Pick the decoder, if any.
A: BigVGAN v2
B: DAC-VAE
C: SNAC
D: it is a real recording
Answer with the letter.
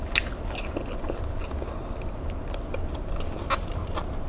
D